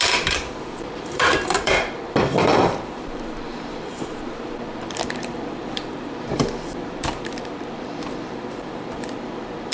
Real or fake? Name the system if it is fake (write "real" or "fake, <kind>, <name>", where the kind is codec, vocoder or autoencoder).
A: fake, vocoder, BigVGAN v2